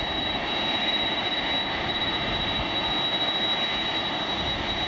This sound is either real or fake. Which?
real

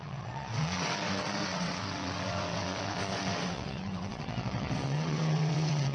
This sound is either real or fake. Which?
fake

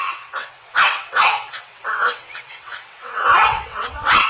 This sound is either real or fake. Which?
fake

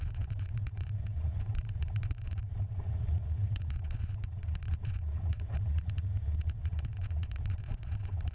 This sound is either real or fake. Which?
fake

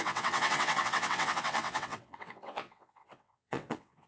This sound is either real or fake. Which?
fake